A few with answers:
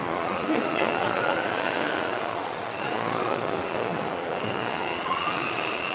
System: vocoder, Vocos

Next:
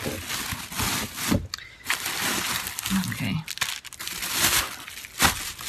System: none